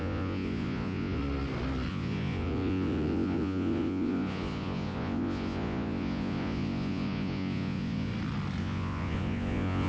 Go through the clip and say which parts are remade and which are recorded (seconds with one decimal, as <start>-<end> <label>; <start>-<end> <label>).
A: 0.0-1.2 remade; 1.2-1.9 recorded; 1.9-8.1 remade; 8.1-8.6 recorded; 8.6-9.9 remade